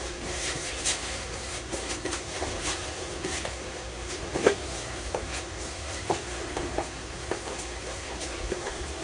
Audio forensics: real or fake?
fake